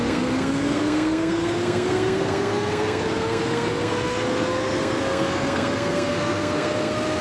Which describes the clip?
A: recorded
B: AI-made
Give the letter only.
B